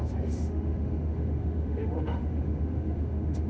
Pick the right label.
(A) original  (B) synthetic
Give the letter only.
B